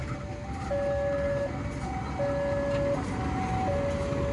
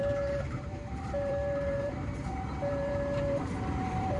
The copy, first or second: second